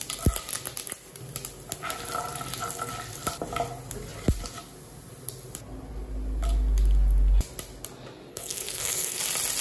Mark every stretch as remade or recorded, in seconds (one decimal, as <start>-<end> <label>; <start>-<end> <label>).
0.0-8.3 recorded; 8.3-9.2 remade; 9.2-9.6 recorded